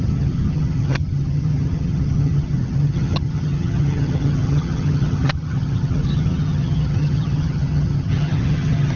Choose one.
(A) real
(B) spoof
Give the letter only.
B